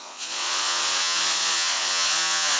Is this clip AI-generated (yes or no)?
yes